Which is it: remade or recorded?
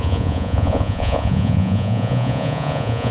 remade